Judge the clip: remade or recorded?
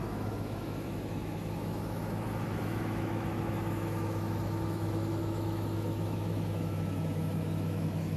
remade